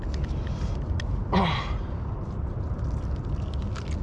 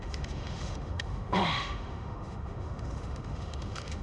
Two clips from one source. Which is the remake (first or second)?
second